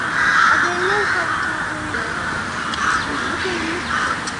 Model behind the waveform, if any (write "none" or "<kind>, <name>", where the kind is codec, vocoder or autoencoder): none